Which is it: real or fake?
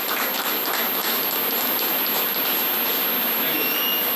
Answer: real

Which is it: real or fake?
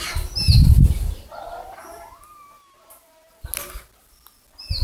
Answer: real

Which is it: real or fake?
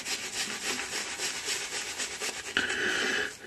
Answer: real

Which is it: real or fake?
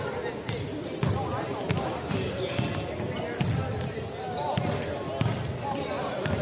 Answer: real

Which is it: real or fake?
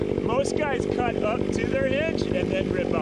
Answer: real